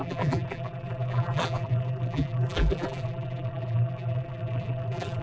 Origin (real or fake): fake